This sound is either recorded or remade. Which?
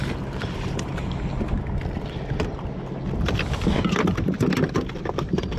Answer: recorded